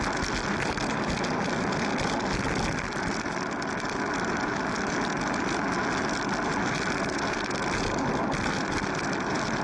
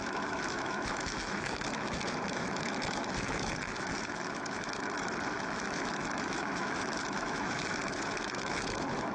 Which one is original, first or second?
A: first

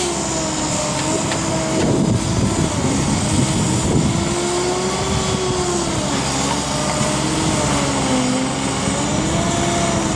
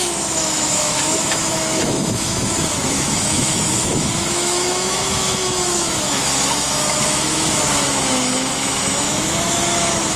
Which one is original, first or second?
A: first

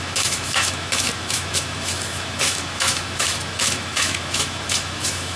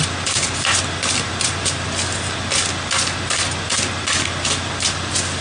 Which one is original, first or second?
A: second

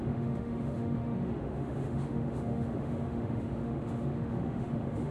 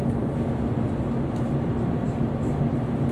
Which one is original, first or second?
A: second